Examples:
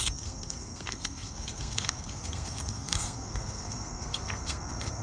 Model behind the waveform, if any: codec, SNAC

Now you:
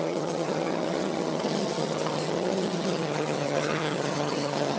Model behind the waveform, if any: vocoder, HiFi-GAN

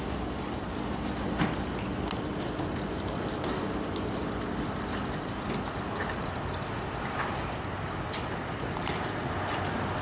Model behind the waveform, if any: none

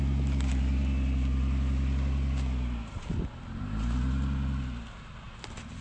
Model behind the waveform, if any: none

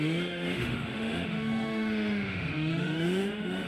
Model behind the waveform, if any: autoencoder, DAC-VAE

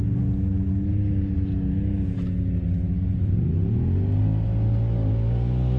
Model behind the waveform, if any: none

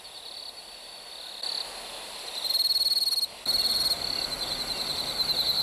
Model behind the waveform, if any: none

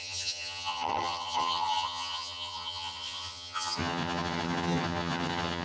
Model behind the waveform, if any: vocoder, HiFi-GAN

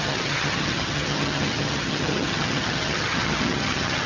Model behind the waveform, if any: vocoder, HiFi-GAN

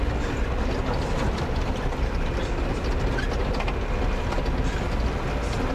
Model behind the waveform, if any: none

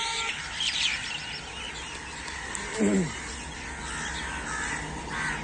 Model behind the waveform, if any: none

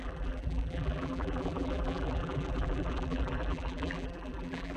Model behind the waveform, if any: vocoder, BigVGAN v2